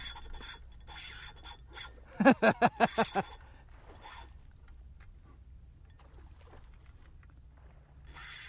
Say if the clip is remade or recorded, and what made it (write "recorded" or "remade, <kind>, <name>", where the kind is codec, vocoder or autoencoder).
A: recorded